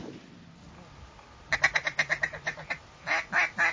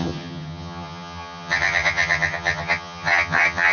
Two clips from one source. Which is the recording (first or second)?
first